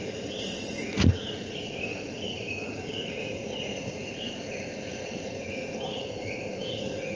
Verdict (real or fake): fake